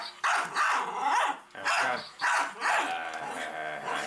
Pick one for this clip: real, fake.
real